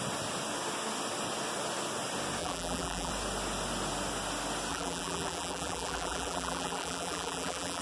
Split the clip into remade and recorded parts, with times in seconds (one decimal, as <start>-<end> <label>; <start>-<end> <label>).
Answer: 0.0-2.4 recorded; 2.4-3.1 remade; 3.1-4.7 recorded; 4.7-7.8 remade